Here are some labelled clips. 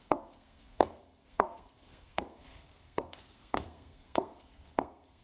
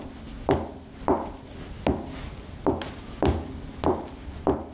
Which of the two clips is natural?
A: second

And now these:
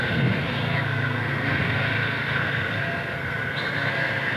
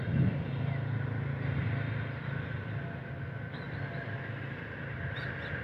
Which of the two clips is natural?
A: second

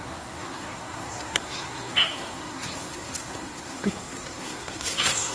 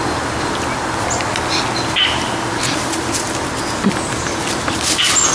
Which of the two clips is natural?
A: second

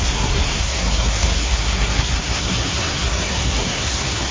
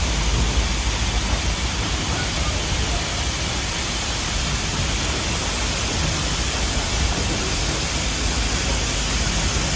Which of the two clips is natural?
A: second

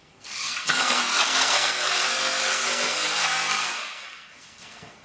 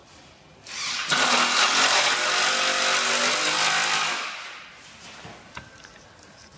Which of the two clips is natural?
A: second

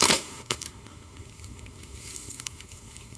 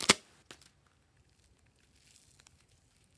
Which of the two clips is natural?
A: second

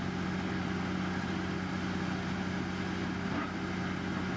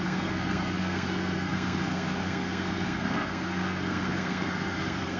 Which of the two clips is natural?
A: first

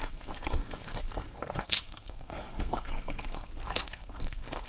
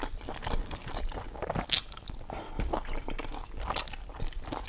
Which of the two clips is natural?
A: second